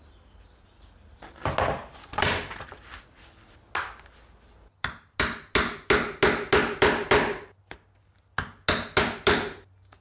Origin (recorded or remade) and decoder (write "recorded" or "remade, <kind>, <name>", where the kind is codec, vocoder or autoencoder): recorded